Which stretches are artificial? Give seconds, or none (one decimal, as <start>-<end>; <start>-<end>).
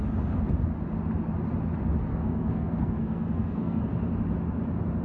2.1-3.8